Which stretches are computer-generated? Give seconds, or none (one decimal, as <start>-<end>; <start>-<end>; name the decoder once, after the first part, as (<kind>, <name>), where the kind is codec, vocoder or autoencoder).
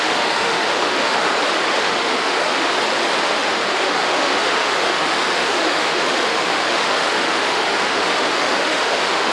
0.0-1.3 (autoencoder, DAC-VAE); 1.8-2.7; 3.2-9.3